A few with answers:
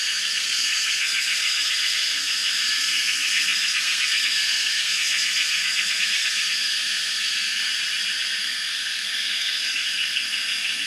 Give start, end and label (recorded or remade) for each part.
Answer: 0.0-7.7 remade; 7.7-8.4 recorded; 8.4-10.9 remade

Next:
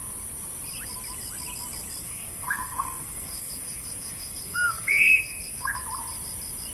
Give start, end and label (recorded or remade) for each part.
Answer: 0.0-2.0 recorded; 2.0-5.8 remade; 5.8-6.7 recorded

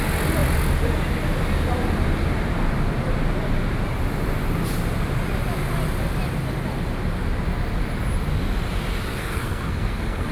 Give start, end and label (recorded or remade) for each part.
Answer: 0.0-9.1 recorded; 9.1-10.3 remade